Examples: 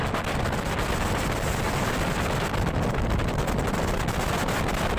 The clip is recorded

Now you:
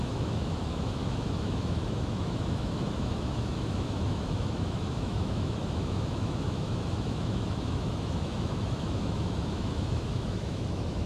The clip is remade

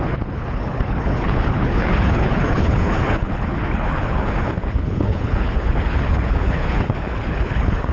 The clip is remade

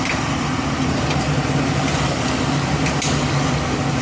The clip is recorded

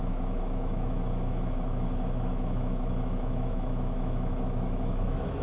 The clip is remade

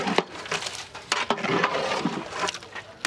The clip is recorded